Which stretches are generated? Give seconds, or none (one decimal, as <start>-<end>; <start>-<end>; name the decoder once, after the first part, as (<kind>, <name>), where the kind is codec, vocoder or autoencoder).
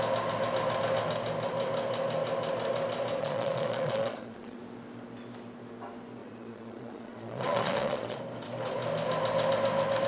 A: 3.2-4.6 (vocoder, Vocos); 6.2-8.2